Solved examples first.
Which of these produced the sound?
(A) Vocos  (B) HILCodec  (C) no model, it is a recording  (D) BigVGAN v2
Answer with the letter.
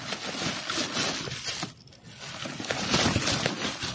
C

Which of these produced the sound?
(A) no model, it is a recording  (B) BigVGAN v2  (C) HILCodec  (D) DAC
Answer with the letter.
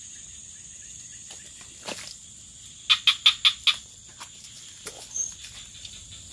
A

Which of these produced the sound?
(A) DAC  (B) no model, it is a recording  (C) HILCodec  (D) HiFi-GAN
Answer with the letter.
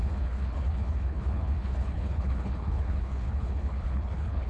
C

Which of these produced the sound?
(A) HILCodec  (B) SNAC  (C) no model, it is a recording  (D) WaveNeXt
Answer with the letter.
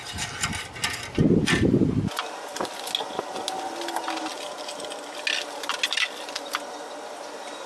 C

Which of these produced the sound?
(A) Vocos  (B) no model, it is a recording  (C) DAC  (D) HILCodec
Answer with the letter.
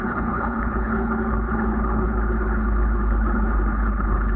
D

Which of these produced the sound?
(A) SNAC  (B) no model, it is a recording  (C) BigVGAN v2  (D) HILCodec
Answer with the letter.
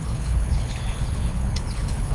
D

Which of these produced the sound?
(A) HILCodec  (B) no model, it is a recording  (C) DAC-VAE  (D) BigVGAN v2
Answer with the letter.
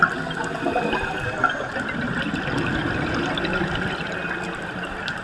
B